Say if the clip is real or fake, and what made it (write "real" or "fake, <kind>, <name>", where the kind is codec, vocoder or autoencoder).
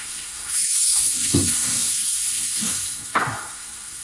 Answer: fake, codec, SNAC